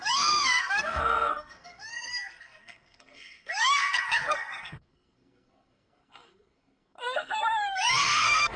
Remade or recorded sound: remade